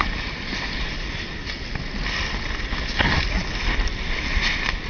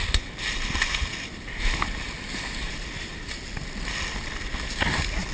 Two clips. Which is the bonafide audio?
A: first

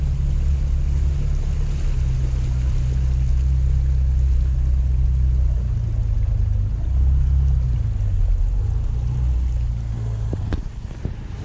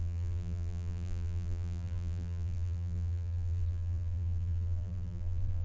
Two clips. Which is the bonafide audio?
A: first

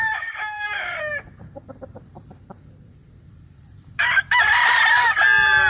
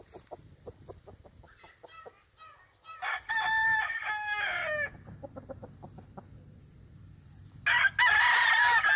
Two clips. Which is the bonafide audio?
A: second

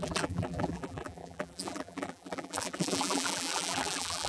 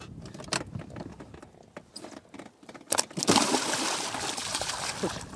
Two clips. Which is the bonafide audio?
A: second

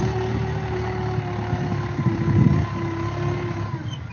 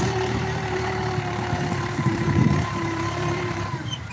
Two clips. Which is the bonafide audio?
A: first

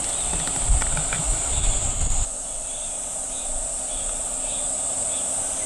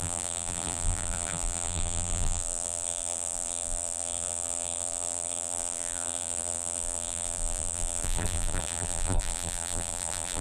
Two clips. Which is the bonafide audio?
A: first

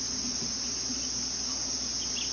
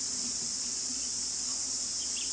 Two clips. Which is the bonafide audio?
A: first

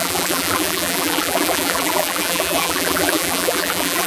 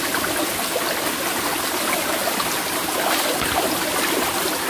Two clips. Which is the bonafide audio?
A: second